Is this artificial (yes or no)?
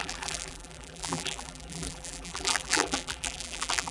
yes